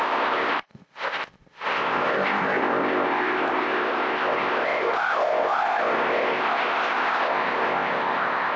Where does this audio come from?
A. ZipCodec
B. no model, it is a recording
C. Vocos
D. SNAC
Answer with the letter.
A